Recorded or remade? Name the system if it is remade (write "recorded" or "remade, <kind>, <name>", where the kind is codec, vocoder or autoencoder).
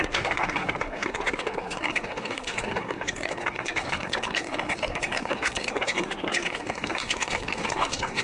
remade, codec, SNAC